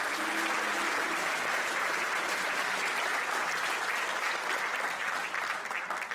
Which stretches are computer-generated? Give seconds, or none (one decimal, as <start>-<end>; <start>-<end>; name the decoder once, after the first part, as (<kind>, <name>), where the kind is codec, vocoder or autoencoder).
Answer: 1.1-2.8 (vocoder, BigVGAN v2)